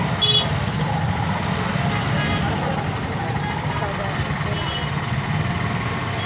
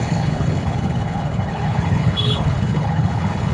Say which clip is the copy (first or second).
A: second